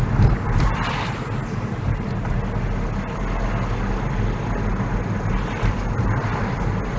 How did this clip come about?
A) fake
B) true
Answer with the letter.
B